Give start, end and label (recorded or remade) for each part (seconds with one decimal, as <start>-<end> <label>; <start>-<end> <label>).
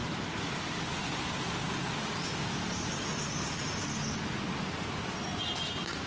0.0-1.2 remade; 1.2-1.6 recorded; 1.6-2.9 remade; 2.9-6.1 recorded